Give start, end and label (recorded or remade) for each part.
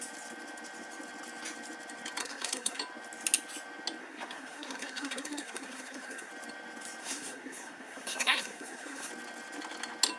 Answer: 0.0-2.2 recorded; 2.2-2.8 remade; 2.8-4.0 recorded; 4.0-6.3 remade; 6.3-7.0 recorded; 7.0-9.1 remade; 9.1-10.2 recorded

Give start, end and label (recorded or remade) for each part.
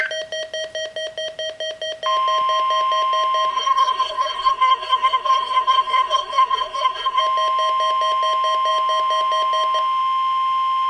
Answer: 0.0-3.5 recorded; 3.5-7.2 remade; 7.2-10.9 recorded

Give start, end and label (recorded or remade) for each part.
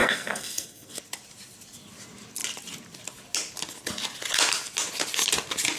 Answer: 0.0-1.0 remade; 1.0-5.8 recorded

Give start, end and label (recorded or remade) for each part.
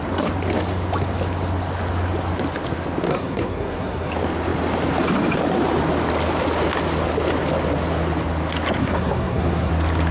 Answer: 0.0-3.1 recorded; 3.1-4.1 remade; 4.1-8.8 recorded; 8.8-9.7 remade; 9.7-10.1 recorded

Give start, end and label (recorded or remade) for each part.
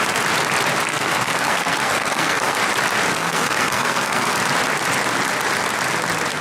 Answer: 0.0-0.9 recorded; 0.9-2.6 remade; 2.6-3.1 recorded; 3.1-4.4 remade; 4.4-6.4 recorded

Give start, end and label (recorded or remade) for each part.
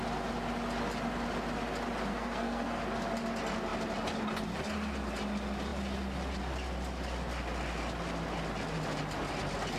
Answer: 0.0-2.1 recorded; 2.1-2.8 remade; 2.8-9.8 recorded